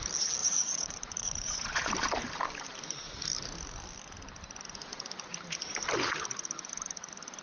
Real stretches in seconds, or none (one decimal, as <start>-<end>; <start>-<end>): 0.0-0.4; 1.9-7.4